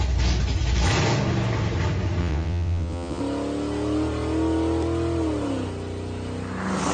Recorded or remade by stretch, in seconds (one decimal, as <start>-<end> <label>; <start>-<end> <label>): 0.0-2.2 recorded; 2.2-3.2 remade; 3.2-6.9 recorded